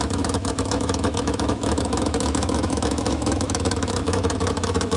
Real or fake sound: fake